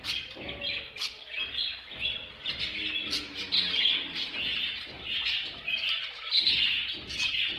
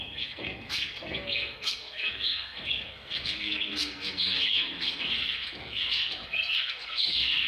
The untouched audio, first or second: first